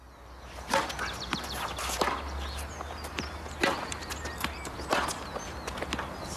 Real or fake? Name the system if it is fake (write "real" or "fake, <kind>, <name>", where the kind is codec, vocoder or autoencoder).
real